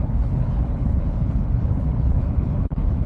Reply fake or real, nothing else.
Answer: fake